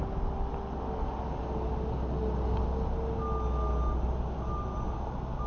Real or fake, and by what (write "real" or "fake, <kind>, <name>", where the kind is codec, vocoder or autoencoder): real